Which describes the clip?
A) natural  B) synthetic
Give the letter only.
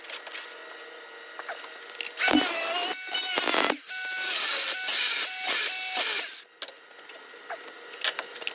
A